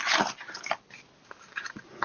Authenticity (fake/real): real